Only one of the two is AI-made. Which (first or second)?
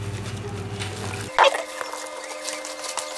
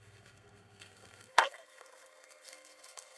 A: second